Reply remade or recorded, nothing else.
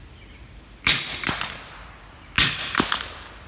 recorded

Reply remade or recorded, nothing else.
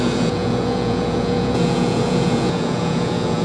remade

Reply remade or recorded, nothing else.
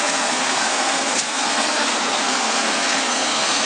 remade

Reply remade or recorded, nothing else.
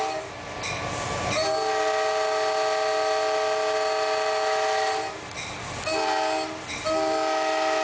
recorded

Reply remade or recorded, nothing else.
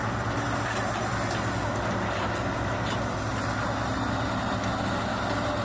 recorded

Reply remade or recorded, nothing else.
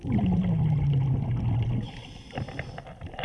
recorded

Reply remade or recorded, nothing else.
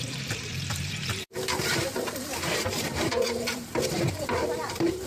remade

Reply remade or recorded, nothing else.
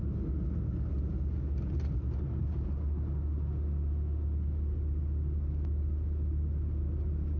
recorded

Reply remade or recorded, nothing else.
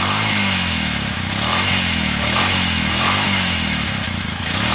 remade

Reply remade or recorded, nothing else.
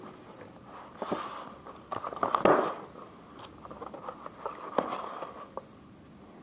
recorded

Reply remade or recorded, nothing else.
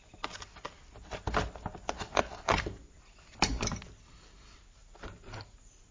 recorded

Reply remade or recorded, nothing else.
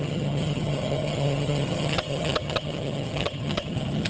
remade